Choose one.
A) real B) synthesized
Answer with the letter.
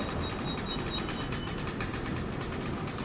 A